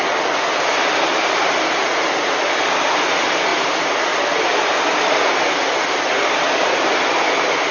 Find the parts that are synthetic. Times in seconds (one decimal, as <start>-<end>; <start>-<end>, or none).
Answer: none